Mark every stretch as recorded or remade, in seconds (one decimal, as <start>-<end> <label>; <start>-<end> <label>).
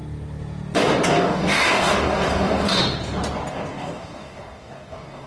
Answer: 0.0-1.1 recorded; 1.1-2.8 remade; 2.8-3.5 recorded; 3.5-5.3 remade